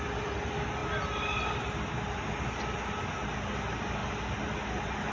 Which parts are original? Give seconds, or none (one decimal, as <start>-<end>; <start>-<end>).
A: 0.0-5.1

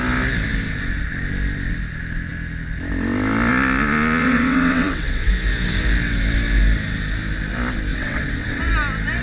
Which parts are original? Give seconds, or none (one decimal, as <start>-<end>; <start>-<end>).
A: 0.0-4.2; 5.3-7.9; 8.7-9.2

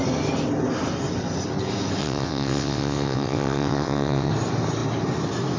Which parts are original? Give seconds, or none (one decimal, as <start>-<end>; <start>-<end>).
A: 0.0-2.0; 4.3-5.6

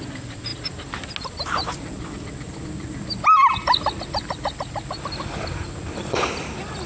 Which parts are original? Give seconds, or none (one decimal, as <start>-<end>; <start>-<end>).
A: 0.0-6.9

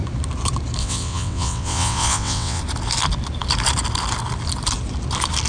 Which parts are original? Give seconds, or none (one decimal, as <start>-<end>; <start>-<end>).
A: 0.0-0.8; 2.6-5.5